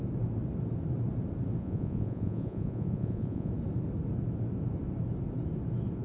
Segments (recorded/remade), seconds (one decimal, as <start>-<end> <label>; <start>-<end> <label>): 0.0-1.6 recorded; 1.6-3.5 remade; 3.5-6.0 recorded